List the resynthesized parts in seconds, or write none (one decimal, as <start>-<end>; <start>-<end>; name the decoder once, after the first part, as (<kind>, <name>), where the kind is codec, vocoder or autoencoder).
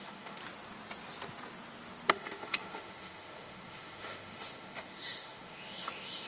0.0-0.4 (autoencoder, DAC-VAE); 2.1-6.3